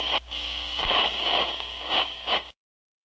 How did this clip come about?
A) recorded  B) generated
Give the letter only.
B